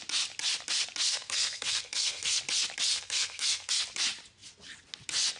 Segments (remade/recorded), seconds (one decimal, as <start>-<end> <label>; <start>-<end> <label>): 0.0-1.1 recorded; 1.1-2.4 remade; 2.4-2.9 recorded; 2.9-3.7 remade; 3.7-5.4 recorded